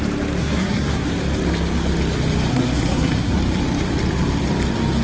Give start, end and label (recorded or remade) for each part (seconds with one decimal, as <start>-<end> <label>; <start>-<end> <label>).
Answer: 0.0-0.4 recorded; 0.4-1.1 remade; 1.1-2.5 recorded; 2.5-3.4 remade; 3.4-5.0 recorded